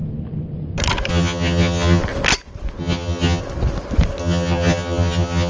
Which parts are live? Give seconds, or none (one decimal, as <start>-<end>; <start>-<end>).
0.0-1.1; 2.0-2.8; 3.4-4.2